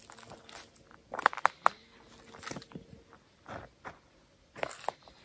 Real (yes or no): yes